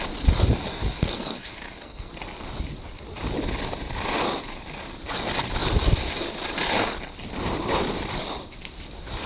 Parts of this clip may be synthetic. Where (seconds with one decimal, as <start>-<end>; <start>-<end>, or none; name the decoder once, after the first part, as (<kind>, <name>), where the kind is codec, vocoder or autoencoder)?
0.7-2.1 (codec, SNAC)